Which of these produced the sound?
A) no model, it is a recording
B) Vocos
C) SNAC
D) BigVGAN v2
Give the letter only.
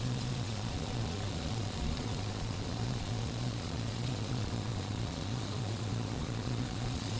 B